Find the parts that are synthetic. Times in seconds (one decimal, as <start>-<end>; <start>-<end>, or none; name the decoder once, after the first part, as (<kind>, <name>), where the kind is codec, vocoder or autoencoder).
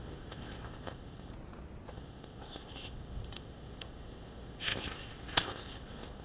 0.0-1.3 (codec, ZipCodec); 1.9-6.2